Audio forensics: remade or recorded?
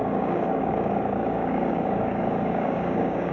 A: remade